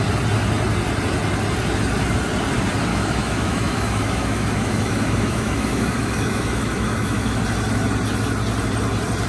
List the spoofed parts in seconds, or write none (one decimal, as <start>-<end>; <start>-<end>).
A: 2.9-7.4